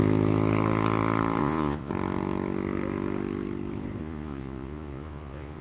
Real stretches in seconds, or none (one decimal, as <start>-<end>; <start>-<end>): 0.0-1.4; 1.9-4.0

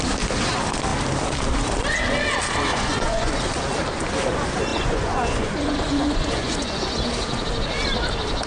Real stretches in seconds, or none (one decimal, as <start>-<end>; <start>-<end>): 0.0-2.7; 3.3-4.7; 7.0-8.5

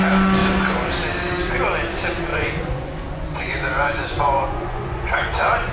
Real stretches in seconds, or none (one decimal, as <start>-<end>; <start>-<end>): 0.0-2.3

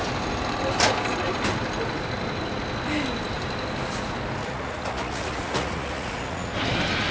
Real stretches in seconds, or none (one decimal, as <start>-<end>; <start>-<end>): 0.0-4.4; 6.5-7.1

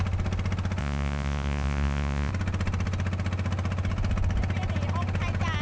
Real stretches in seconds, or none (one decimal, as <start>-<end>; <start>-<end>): 0.0-0.8; 2.3-5.6